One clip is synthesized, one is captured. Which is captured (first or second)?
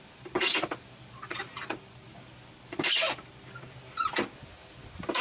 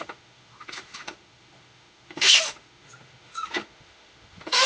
first